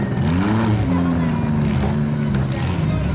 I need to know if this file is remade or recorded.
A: recorded